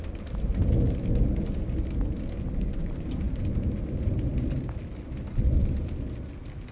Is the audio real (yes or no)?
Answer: yes